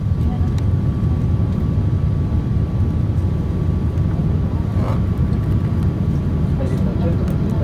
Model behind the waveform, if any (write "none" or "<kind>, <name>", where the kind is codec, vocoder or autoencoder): none